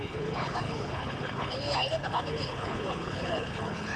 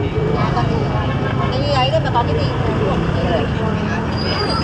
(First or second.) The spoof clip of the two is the first